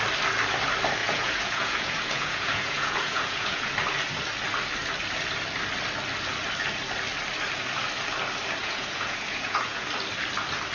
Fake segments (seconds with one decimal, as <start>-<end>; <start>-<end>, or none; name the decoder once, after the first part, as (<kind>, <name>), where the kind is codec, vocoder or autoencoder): 1.0-3.7 (vocoder, Vocos); 8.6-9.9